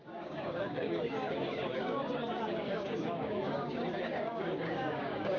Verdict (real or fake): fake